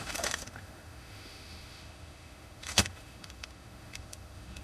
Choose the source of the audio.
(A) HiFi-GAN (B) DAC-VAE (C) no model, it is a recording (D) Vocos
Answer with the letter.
B